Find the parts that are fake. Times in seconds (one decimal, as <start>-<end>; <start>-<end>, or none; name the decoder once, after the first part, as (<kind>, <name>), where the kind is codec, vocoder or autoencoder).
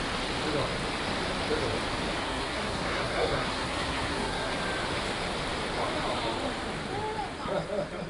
2.2-4.5 (codec, SNAC)